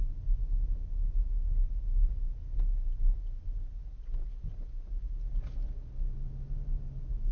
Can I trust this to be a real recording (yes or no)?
yes